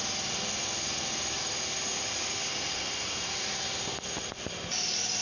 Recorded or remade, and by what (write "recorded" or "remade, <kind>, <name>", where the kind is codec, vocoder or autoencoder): remade, vocoder, BigVGAN v2